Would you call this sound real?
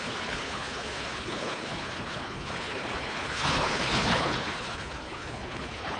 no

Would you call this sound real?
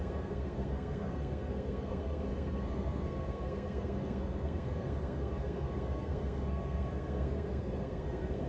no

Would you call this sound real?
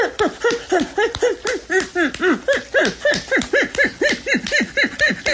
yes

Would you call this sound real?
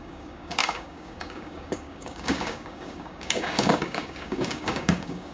no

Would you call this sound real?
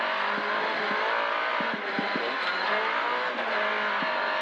yes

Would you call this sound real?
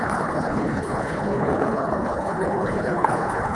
no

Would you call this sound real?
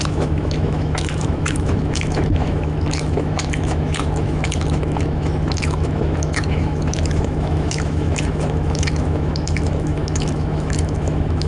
no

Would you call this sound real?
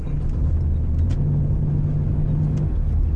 yes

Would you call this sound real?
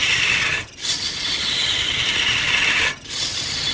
yes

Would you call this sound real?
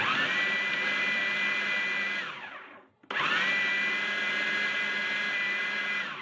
yes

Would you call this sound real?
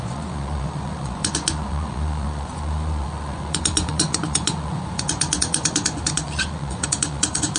no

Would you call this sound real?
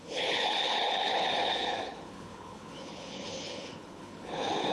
no